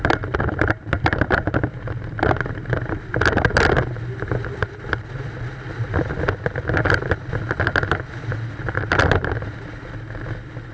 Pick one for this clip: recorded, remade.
recorded